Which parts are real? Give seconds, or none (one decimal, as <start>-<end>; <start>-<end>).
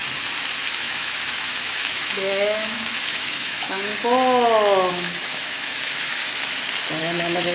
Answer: 0.0-0.7; 3.9-4.9; 6.2-7.0